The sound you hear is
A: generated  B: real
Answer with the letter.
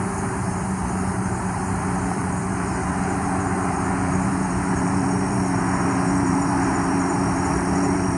A